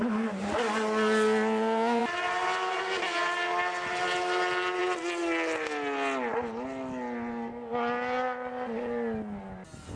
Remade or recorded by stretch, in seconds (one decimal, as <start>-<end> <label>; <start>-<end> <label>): 0.0-2.0 recorded; 2.0-2.8 remade; 2.8-10.0 recorded